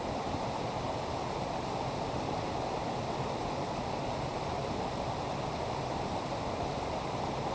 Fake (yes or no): no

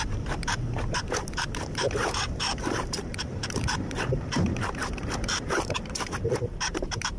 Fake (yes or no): yes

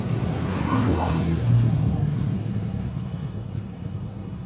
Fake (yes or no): yes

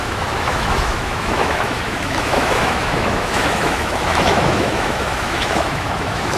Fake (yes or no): yes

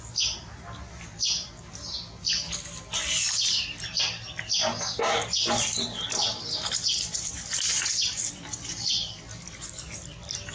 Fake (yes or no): no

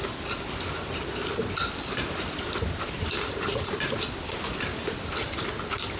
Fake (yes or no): yes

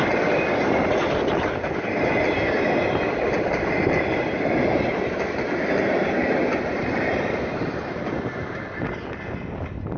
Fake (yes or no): no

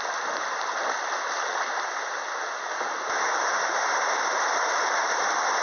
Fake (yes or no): no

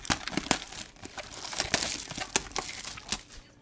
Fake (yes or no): no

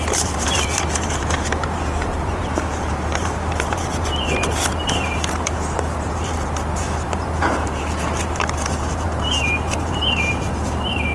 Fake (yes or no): yes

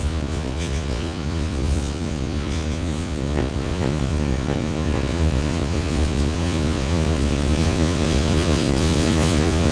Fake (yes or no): yes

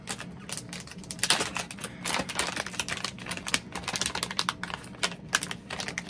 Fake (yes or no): no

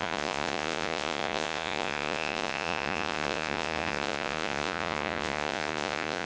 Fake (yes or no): yes